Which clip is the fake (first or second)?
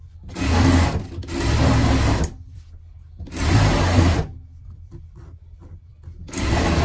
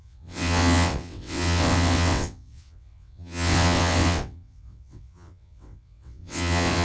second